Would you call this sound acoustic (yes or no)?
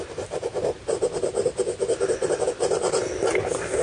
yes